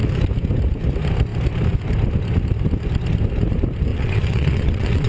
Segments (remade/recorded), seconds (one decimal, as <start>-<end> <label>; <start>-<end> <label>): 0.0-3.9 recorded; 3.9-5.1 remade